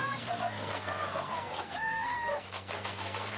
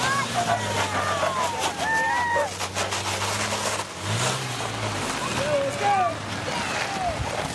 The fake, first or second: first